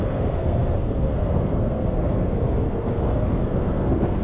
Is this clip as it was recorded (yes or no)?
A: no